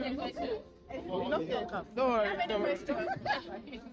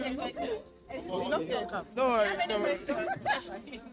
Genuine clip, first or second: second